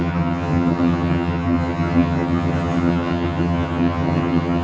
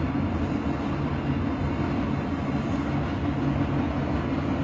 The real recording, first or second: second